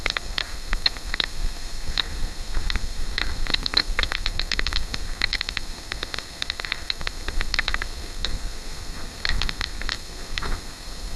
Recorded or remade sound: remade